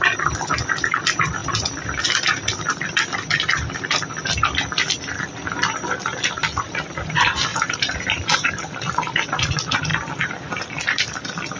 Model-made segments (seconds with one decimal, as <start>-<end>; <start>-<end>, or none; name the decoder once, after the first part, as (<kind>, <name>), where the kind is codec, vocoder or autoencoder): 7.5-8.6 (vocoder, BigVGAN v2)